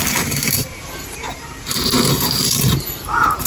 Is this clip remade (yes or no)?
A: yes